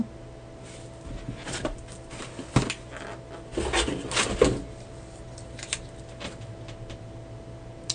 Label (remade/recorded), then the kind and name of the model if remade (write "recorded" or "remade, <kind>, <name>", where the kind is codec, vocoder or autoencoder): recorded